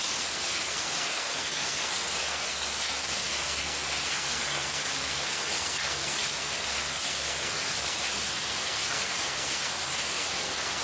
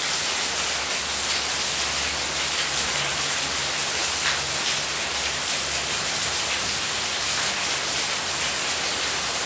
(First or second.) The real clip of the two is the second